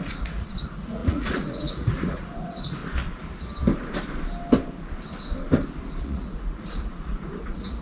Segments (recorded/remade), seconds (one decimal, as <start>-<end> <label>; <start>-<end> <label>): 0.0-2.8 remade; 2.8-6.0 recorded; 6.0-7.8 remade